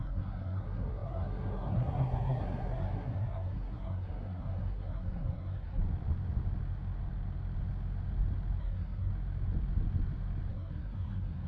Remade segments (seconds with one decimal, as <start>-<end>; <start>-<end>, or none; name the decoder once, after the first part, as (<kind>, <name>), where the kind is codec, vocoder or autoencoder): 0.0-5.8 (codec, SNAC); 8.6-9.1; 10.5-11.5